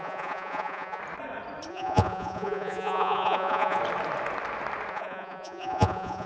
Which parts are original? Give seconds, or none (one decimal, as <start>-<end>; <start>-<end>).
1.0-1.7; 3.8-4.9